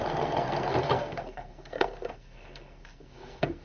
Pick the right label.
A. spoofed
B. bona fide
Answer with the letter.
A